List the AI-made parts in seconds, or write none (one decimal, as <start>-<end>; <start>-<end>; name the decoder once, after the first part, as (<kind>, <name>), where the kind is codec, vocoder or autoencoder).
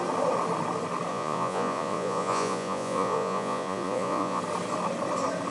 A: 1.1-4.4 (vocoder, Vocos)